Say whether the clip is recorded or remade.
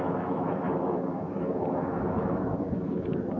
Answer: remade